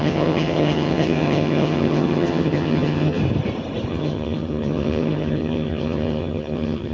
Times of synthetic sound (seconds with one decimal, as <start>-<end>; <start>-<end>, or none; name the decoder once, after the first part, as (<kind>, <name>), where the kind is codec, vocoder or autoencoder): 0.0-3.2 (vocoder, HiFi-GAN); 3.9-6.9